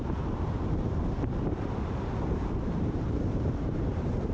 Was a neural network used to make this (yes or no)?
yes